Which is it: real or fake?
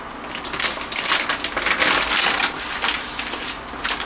real